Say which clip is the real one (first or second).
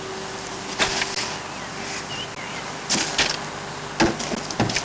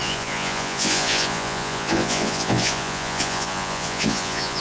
first